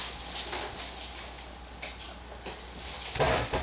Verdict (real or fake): real